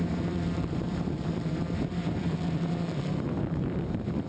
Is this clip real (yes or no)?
no